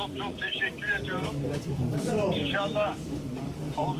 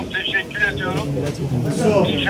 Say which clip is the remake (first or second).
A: first